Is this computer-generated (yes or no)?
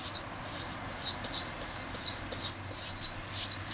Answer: no